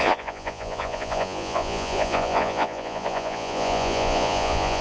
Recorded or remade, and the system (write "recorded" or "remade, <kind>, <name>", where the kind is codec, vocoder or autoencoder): remade, vocoder, Vocos